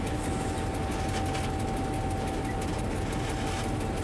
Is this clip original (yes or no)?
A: yes